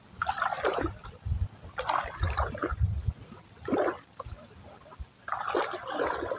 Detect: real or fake real